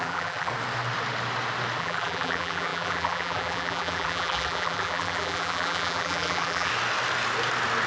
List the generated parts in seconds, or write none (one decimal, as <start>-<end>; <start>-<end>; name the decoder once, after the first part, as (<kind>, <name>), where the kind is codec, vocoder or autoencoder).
0.0-0.5 (vocoder, BigVGAN v2); 1.8-6.7